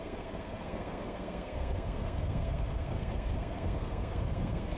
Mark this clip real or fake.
fake